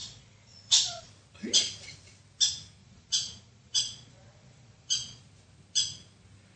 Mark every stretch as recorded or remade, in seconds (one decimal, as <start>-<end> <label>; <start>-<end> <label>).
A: 0.0-1.1 remade; 1.1-2.8 recorded; 2.8-5.2 remade; 5.2-6.6 recorded